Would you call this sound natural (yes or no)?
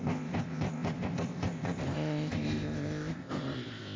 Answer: no